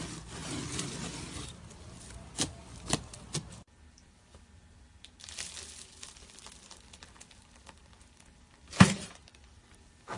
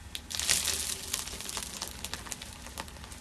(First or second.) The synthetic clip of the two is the first